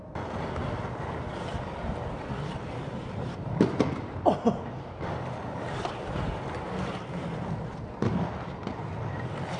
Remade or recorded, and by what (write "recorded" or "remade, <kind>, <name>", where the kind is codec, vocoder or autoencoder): recorded